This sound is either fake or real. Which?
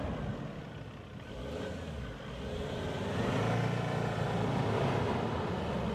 real